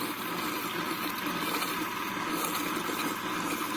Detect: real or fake real